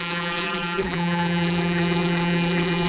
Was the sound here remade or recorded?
remade